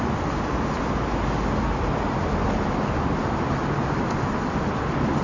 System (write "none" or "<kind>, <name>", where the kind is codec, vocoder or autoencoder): none